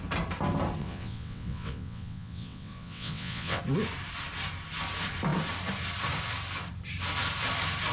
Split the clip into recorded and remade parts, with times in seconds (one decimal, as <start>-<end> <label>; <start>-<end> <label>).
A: 0.0-0.8 recorded; 0.8-3.6 remade; 3.6-7.9 recorded